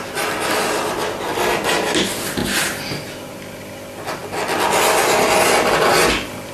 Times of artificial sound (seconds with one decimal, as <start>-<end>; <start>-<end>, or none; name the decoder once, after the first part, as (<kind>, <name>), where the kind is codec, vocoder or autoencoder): none